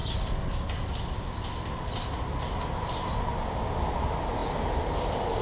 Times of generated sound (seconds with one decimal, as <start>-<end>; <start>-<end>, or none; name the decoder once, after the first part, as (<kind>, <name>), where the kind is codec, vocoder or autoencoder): none